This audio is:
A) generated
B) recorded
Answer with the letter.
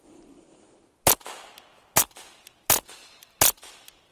B